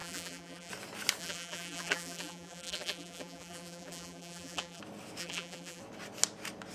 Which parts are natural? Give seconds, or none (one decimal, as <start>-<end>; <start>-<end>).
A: 0.7-1.2; 4.8-5.2; 5.8-6.7